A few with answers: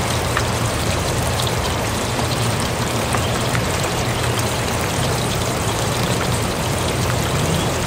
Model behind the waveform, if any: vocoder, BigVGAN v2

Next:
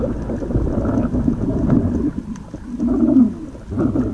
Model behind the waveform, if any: none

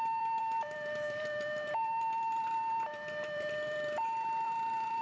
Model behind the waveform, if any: vocoder, BigVGAN v2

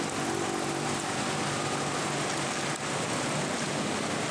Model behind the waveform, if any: none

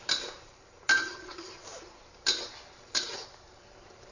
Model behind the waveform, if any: vocoder, BigVGAN v2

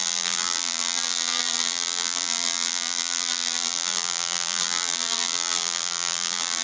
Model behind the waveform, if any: vocoder, BigVGAN v2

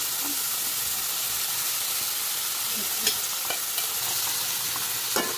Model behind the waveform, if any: none